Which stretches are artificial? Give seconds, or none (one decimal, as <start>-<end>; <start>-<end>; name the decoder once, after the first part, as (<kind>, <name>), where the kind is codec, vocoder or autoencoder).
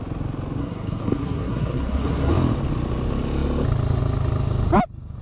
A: 0.6-2.3 (codec, SNAC)